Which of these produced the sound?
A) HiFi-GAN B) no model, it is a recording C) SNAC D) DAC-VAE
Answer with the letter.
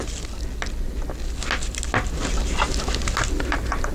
B